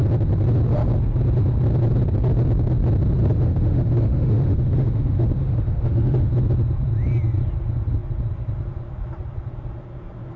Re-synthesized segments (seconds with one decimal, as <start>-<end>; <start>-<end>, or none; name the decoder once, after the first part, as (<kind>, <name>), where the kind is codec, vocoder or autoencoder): 3.2-6.3 (autoencoder, DAC-VAE)